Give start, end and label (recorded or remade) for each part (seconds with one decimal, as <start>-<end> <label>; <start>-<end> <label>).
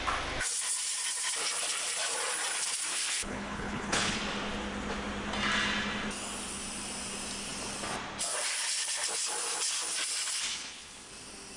0.0-2.9 recorded; 2.9-4.2 remade; 4.2-10.5 recorded; 10.5-11.1 remade; 11.1-11.6 recorded